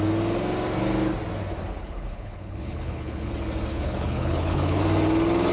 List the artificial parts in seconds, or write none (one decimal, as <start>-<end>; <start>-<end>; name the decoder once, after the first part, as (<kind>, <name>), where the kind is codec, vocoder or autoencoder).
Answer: 1.8-3.3 (codec, HILCodec); 3.7-4.8